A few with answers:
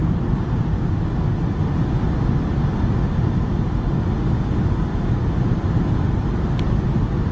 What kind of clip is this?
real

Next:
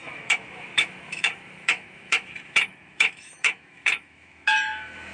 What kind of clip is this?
fake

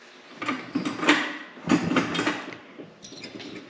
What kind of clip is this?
real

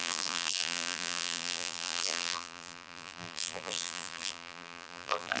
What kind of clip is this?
fake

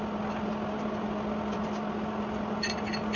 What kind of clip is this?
real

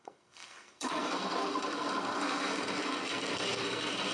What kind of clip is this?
fake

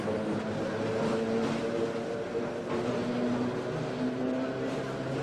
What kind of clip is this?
real